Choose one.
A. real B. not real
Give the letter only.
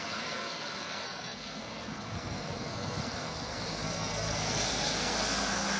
B